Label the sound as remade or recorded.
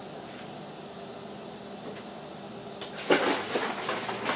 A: recorded